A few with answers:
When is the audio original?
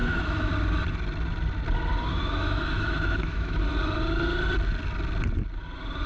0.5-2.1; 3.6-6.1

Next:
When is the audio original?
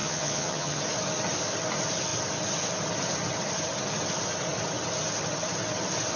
0.8-6.2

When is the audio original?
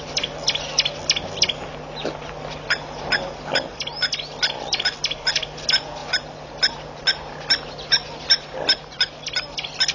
0.0-9.9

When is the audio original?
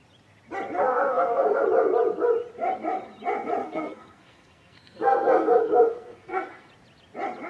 0.0-0.8; 1.6-3.6; 6.7-7.5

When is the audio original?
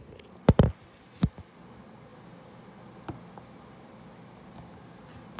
0.0-5.4